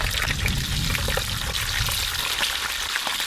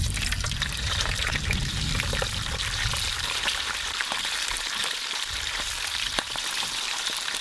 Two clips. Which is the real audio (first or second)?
first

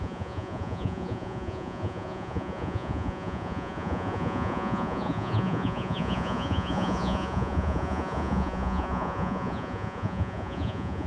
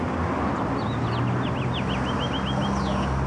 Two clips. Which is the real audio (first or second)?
second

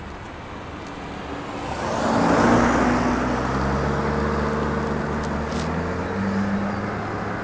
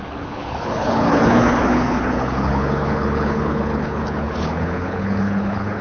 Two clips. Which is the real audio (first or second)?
first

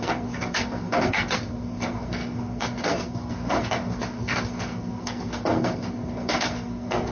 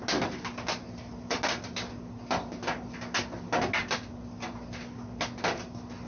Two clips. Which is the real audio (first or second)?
second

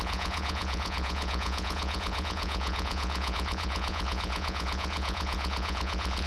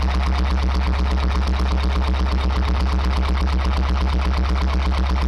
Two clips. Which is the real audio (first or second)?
second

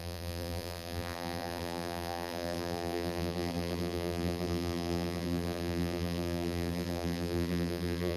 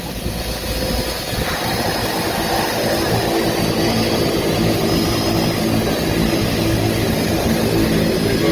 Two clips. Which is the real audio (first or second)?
second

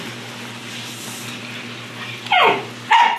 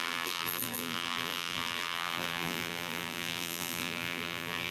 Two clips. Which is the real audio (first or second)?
first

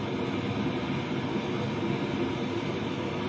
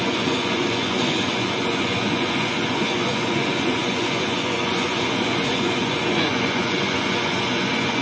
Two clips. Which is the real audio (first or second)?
first